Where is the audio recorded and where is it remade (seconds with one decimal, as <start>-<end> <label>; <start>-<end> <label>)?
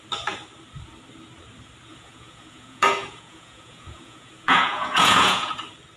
0.0-1.9 recorded; 1.9-5.5 remade; 5.5-6.0 recorded